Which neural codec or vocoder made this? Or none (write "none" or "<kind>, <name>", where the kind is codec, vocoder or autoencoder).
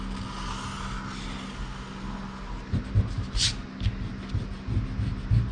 none